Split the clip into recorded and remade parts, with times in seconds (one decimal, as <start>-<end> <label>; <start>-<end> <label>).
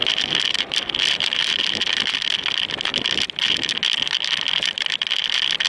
0.0-2.4 remade; 2.4-5.7 recorded